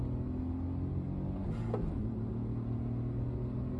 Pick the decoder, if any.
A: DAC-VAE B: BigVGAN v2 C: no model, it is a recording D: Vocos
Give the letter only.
C